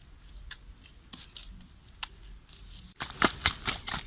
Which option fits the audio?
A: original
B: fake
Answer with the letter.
A